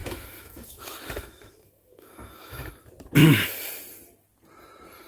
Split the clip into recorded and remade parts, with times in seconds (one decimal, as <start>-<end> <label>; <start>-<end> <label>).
0.0-2.7 remade; 2.7-3.2 recorded; 3.2-3.7 remade; 3.7-5.1 recorded